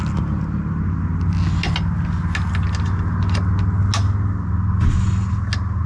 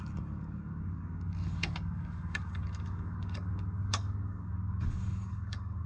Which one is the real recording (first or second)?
first